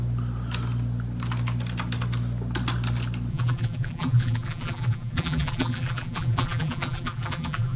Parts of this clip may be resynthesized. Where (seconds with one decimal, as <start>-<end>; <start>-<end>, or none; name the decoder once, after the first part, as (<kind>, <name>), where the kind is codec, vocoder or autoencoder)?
3.3-7.8 (vocoder, BigVGAN v2)